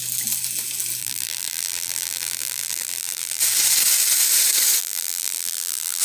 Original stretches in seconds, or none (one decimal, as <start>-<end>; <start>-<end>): 0.0-1.0; 3.4-4.8

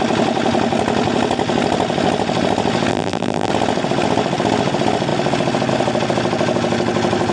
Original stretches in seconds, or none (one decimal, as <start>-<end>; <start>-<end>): 0.0-2.9; 3.5-7.3

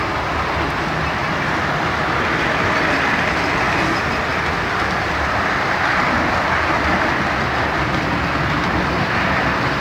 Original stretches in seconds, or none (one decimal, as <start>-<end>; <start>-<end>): 0.0-9.8

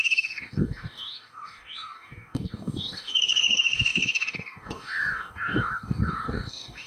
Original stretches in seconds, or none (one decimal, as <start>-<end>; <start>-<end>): none

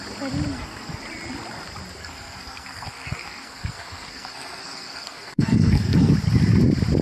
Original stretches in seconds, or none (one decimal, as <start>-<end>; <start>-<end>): 0.0-0.5; 1.0-2.0; 6.1-7.0